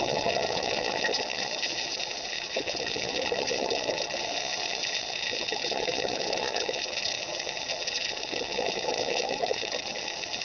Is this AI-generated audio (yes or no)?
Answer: yes